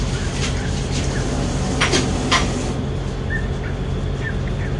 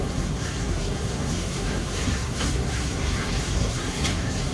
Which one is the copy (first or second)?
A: second